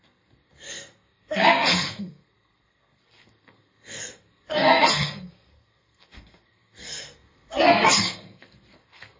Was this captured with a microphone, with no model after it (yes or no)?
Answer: no